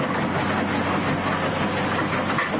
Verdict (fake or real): real